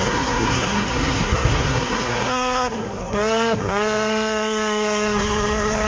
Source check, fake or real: fake